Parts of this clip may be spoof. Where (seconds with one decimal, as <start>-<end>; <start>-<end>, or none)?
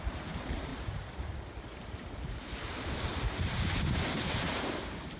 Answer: 0.0-0.7; 2.6-5.2